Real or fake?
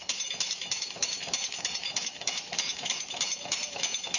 fake